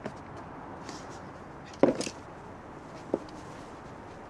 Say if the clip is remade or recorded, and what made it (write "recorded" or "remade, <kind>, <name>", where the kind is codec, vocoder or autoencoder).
recorded